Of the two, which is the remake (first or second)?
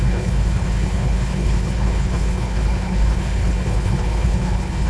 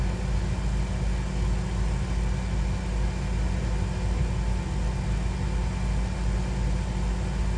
first